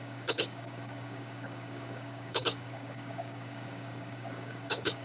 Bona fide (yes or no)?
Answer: no